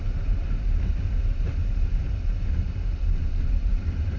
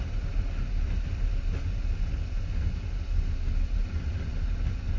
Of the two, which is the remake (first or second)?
first